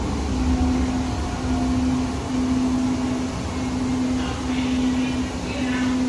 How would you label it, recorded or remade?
recorded